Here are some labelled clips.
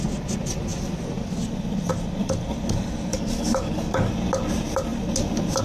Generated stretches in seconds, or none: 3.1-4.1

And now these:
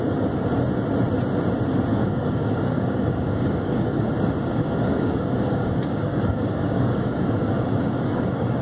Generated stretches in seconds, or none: 1.9-4.0; 4.4-8.6

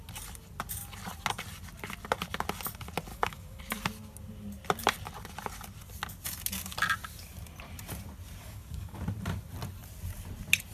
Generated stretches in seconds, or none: 3.1-3.6; 8.4-9.0

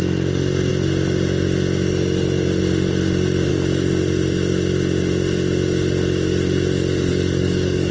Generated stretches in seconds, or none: 7.1-7.9

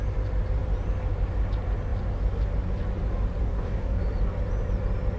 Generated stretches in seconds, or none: 3.4-4.0